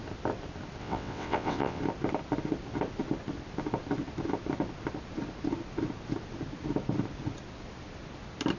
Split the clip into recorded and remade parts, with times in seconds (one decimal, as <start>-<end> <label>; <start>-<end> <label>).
0.0-0.8 recorded; 0.8-1.8 remade; 1.8-8.6 recorded